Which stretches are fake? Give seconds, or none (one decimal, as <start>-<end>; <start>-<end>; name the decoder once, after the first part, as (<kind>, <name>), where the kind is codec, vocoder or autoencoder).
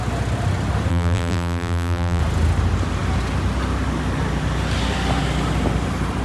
0.9-2.2 (vocoder, BigVGAN v2)